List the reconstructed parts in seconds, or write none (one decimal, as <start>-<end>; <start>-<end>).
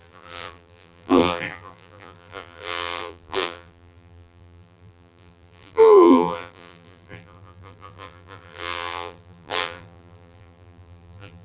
0.0-11.4